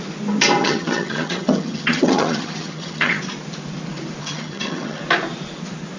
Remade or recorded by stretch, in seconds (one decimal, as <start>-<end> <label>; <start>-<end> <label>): 0.0-0.6 recorded; 0.6-3.2 remade; 3.2-4.2 recorded; 4.2-5.0 remade; 5.0-6.0 recorded